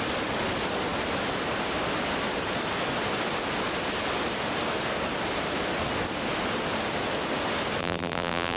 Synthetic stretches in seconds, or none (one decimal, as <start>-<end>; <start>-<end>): 7.8-8.6